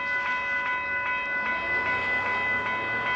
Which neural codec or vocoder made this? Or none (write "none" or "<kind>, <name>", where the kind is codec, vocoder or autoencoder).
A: none